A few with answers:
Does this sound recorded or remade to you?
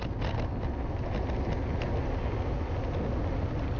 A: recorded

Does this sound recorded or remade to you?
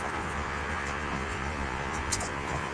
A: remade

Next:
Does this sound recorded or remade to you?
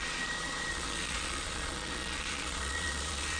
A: remade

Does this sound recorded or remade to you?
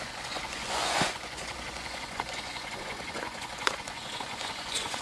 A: remade